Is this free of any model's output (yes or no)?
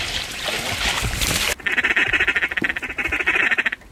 yes